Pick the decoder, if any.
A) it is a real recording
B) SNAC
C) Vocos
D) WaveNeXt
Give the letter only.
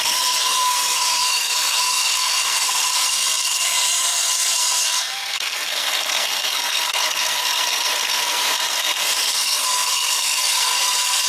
B